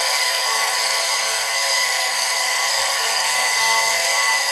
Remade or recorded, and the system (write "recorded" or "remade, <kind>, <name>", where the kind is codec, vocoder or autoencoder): remade, codec, SNAC